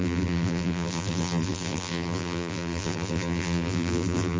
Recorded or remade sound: remade